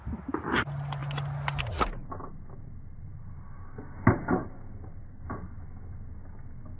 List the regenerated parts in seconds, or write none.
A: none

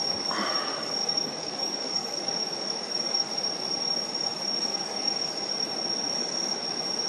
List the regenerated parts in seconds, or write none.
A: 1.0-3.3 (codec, DAC); 4.7-5.3

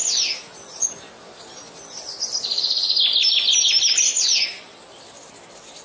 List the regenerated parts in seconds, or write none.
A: none